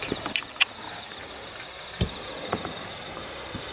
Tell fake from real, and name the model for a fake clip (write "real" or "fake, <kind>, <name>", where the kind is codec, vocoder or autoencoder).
real